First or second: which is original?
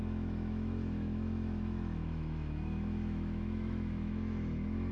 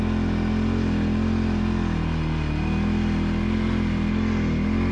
second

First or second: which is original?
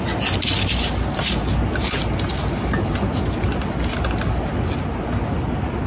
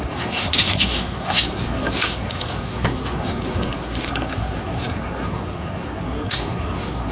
first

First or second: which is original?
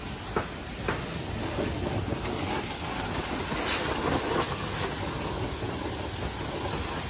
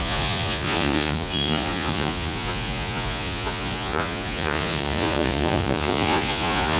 first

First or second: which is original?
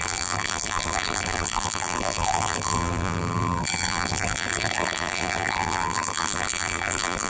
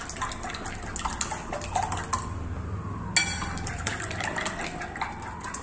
second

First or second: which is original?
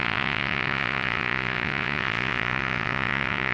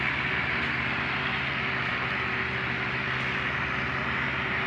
second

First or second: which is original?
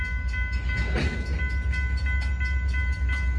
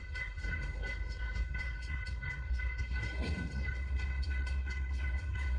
first